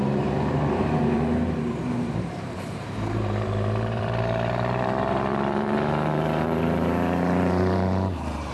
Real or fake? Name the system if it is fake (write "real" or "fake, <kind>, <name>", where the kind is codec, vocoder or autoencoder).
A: fake, vocoder, BigVGAN v2